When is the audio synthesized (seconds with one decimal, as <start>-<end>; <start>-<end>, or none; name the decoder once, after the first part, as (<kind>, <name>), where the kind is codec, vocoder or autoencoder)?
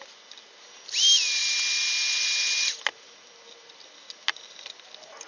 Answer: none